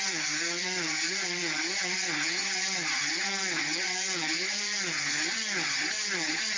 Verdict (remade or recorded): remade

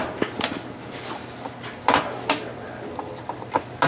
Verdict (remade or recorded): recorded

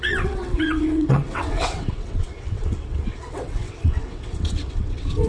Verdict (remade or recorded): remade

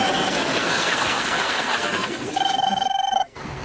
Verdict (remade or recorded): remade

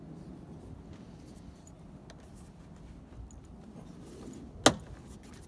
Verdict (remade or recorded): recorded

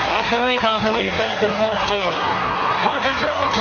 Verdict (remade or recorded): remade